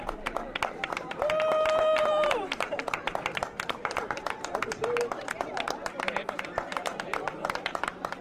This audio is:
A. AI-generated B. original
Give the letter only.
A